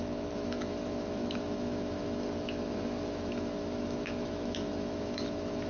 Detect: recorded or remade remade